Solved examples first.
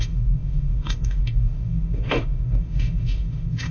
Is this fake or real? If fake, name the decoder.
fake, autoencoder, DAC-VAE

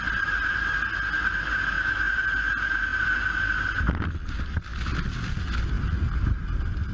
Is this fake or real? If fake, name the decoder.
real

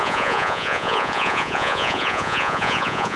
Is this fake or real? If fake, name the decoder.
fake, vocoder, Vocos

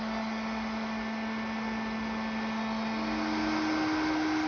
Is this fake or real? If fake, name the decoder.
real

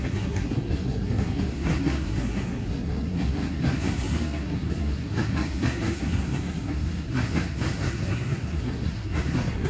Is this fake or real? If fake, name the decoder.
fake, codec, SNAC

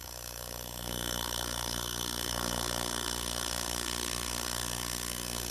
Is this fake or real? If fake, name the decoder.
fake, codec, SNAC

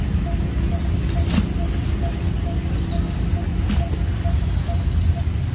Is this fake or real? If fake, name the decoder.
real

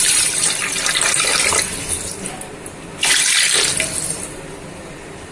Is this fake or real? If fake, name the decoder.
real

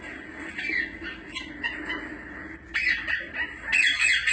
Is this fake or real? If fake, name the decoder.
real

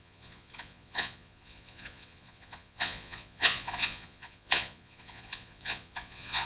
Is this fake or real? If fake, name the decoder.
fake, vocoder, Vocos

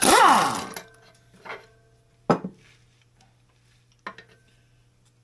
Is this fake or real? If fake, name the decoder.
real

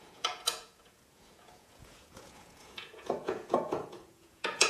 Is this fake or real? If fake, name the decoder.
fake, vocoder, Vocos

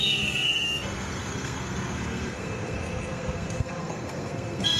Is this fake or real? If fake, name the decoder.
fake, codec, SNAC